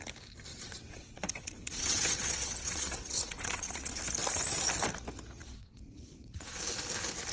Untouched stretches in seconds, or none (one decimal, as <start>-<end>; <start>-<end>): 0.0-0.5; 4.0-5.4; 6.6-7.3

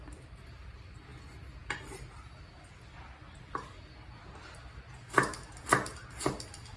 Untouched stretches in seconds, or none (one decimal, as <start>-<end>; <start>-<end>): 0.0-6.8

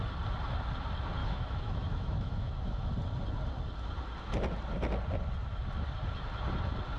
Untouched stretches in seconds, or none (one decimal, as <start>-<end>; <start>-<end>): 0.0-1.2; 2.9-7.0

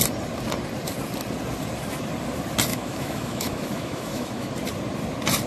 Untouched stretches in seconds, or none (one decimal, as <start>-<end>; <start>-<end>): 0.0-2.7; 4.5-5.5

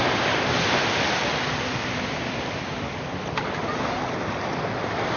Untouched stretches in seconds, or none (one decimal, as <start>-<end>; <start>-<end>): 0.0-5.2